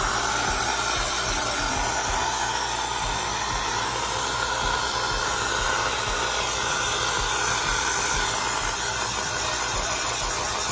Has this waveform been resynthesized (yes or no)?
no